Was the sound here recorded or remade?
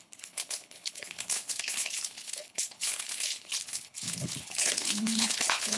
remade